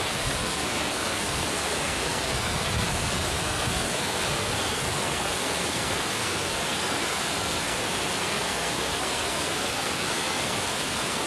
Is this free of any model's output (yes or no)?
no